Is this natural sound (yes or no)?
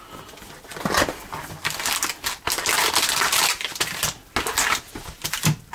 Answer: yes